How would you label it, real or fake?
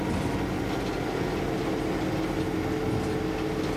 real